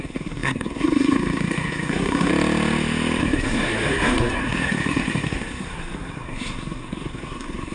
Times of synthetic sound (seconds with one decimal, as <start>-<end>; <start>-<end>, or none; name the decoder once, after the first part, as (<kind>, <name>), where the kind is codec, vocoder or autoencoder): 0.0-2.3 (codec, SNAC); 3.2-7.7